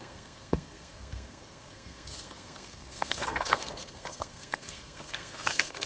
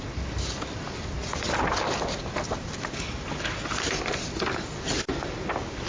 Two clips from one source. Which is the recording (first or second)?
second